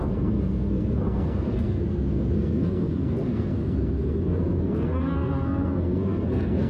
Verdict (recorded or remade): remade